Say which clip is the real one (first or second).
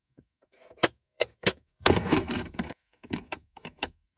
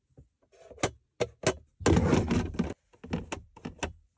second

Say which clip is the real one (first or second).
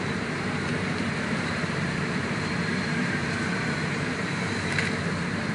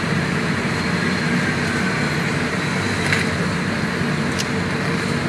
second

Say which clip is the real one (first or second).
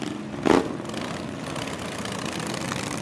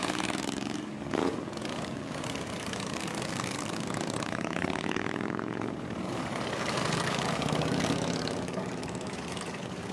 first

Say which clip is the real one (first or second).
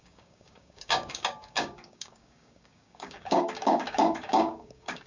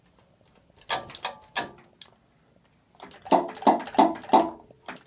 second